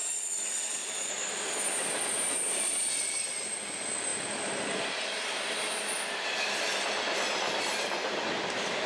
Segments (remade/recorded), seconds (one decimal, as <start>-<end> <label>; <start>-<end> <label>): 0.0-1.1 remade; 1.1-8.9 recorded

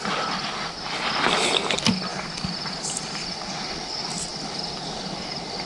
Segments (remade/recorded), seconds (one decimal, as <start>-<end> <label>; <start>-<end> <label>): 0.0-2.1 recorded; 2.1-3.9 remade; 3.9-4.3 recorded; 4.3-5.7 remade

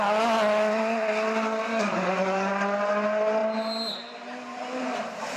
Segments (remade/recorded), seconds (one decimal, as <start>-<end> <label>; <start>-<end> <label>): 0.0-1.7 recorded; 1.7-2.5 remade; 2.5-5.4 recorded